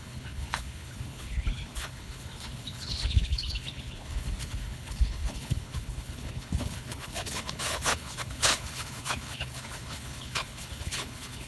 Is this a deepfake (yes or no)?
yes